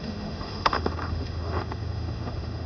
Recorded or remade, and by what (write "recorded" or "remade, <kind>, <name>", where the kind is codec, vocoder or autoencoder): remade, autoencoder, DAC-VAE